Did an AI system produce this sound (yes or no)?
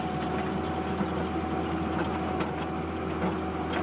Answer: no